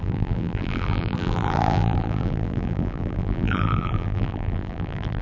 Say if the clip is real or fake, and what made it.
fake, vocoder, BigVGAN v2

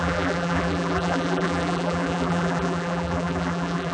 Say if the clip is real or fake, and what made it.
fake, vocoder, BigVGAN v2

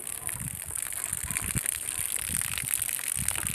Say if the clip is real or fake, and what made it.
real